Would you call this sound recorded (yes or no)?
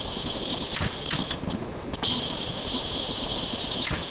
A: yes